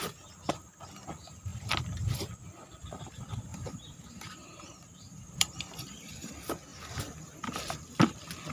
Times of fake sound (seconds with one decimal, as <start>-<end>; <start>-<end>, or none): 3.5-6.3; 6.7-8.1